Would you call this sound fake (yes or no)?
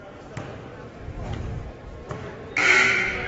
no